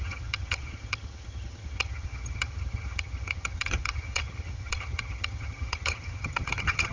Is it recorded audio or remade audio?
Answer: remade